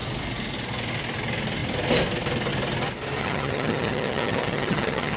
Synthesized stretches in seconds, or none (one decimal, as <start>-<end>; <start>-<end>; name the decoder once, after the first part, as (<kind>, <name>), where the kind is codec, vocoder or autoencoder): 3.2-5.2 (vocoder, HiFi-GAN)